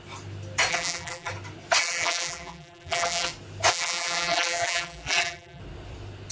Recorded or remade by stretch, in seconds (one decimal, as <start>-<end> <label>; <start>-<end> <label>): 0.0-0.7 recorded; 0.7-1.3 remade; 1.3-1.8 recorded; 1.8-3.3 remade; 3.3-3.7 recorded; 3.7-5.6 remade; 5.6-6.3 recorded